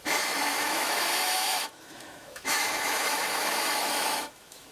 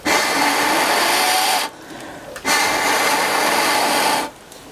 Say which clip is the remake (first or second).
first